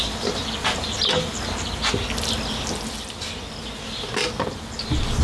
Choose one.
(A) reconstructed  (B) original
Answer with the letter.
B